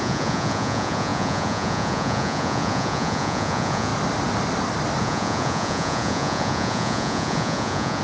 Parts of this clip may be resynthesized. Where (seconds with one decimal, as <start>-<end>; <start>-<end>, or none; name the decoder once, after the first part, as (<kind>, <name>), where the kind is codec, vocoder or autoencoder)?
0.0-3.9 (vocoder, Vocos); 5.0-8.0